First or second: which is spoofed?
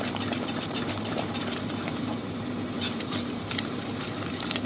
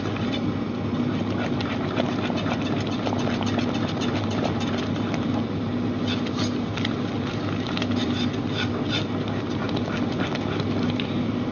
first